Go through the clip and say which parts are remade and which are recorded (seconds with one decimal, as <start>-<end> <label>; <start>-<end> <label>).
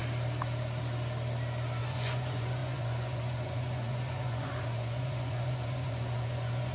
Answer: 0.0-1.8 recorded; 1.8-6.7 remade